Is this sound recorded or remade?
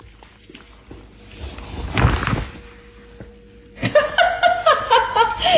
recorded